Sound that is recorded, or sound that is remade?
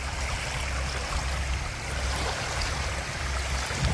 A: recorded